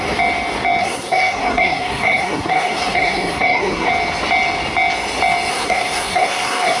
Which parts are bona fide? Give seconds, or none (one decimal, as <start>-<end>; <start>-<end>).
0.0-0.8; 3.9-5.5

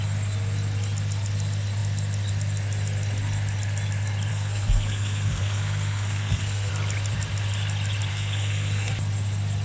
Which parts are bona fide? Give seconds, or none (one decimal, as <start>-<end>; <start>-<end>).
0.0-4.3; 6.7-8.1; 8.9-9.6